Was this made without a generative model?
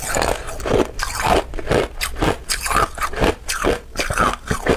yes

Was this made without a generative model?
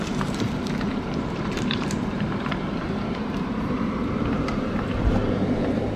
no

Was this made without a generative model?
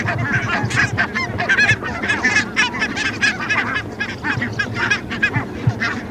yes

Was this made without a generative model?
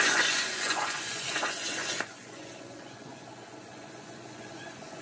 no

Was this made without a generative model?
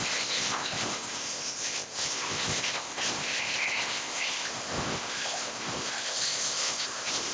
no